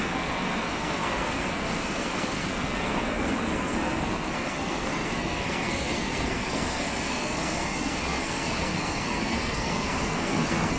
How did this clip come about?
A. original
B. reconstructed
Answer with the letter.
B